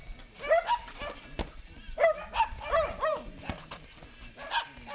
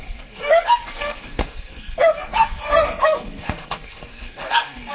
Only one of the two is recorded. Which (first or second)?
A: first